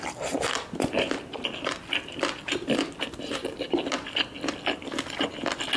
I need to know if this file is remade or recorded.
recorded